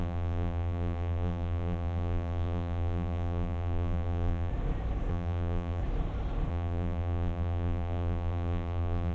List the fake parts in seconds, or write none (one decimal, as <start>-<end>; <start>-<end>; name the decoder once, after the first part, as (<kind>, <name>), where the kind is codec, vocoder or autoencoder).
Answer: 0.0-4.5 (vocoder, BigVGAN v2); 5.1-5.8; 6.5-9.1